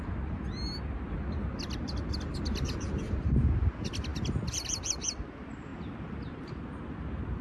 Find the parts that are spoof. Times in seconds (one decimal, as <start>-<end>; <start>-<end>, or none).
none